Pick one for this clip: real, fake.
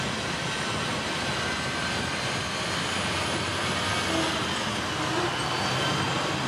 real